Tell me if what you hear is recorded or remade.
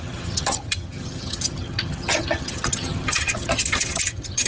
remade